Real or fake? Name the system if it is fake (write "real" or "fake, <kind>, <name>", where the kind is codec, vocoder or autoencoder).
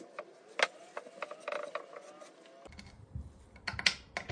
real